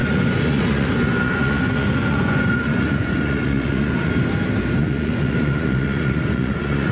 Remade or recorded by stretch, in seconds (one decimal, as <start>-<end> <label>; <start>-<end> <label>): 0.0-4.1 remade; 4.1-4.8 recorded; 4.8-6.9 remade